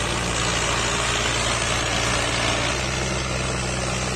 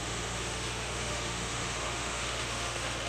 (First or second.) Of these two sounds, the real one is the first